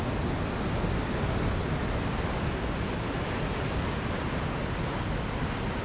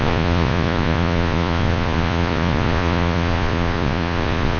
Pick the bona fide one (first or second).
first